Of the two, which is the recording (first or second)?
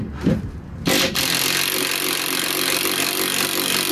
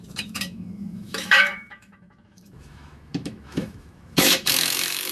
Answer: first